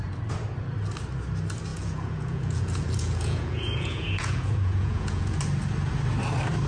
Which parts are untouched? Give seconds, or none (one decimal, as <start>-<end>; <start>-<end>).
0.0-1.7; 5.4-6.7